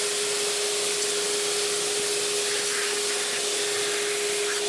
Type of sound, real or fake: real